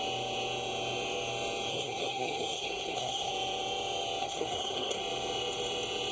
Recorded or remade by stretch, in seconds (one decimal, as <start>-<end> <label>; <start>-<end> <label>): 0.0-1.7 recorded; 1.7-3.3 remade; 3.3-4.2 recorded; 4.2-5.0 remade; 5.0-6.1 recorded